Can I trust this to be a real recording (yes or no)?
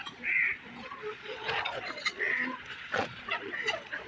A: no